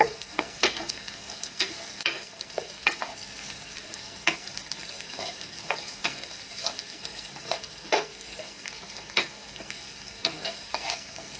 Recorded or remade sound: remade